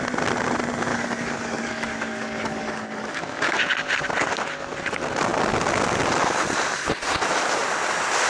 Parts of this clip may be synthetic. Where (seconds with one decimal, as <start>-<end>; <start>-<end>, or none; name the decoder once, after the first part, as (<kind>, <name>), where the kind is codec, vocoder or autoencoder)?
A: 0.9-3.6 (codec, DAC)